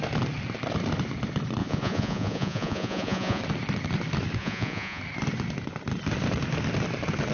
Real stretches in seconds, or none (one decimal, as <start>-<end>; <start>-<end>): 0.0-1.6; 3.4-4.4; 5.0-7.3